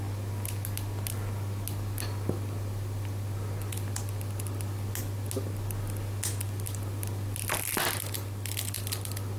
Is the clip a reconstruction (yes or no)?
no